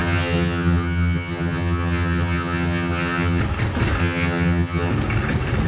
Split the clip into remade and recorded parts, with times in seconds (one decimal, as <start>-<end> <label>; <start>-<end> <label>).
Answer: 0.0-3.4 remade; 3.4-4.0 recorded; 4.0-4.9 remade; 4.9-5.7 recorded